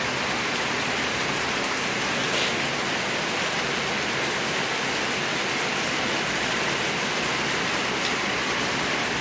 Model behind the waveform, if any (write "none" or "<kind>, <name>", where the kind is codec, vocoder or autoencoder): none